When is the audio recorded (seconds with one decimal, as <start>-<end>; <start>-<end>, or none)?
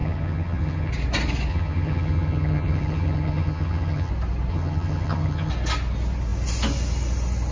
0.9-1.5; 4.1-4.5; 5.5-7.5